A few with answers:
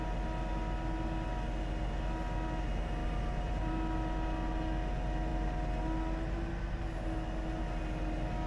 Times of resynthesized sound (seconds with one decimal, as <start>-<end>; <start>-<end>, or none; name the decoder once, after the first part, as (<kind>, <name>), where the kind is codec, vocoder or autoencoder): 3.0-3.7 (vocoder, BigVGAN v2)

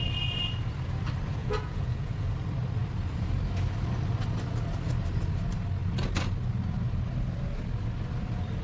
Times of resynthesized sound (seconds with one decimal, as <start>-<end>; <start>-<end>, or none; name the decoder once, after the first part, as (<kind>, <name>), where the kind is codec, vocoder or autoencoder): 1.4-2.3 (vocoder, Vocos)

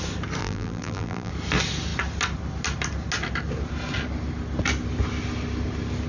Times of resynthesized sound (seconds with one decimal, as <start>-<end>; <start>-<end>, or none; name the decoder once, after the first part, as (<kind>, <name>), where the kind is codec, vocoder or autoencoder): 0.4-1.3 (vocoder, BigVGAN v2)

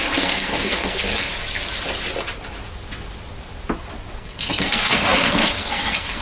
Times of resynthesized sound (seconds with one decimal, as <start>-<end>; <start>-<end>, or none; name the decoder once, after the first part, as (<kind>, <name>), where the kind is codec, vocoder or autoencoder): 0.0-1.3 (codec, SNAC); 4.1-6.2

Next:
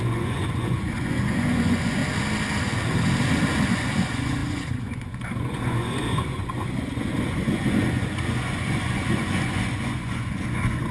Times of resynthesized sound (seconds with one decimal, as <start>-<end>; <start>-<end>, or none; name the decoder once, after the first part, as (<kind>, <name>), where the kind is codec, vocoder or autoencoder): 0.0-2.0 (vocoder, Vocos); 3.7-10.9

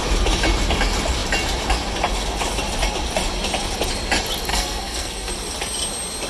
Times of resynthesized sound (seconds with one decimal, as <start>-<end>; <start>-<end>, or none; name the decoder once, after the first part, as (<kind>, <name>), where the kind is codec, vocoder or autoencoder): 4.5-5.3 (codec, SNAC)

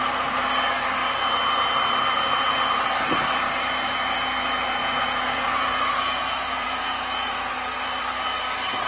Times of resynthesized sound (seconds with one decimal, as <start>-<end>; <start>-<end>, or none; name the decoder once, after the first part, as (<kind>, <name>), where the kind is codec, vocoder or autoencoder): 4.8-7.5 (vocoder, Vocos)